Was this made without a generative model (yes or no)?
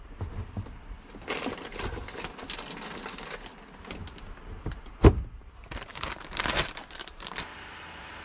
yes